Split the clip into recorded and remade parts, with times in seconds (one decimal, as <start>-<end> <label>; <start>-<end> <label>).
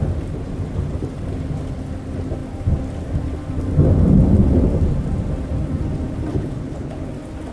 0.0-6.3 recorded; 6.3-7.1 remade; 7.1-7.5 recorded